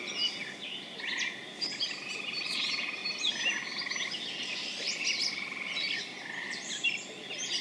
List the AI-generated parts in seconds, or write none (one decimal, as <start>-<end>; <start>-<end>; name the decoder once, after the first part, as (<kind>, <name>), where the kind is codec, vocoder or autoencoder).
none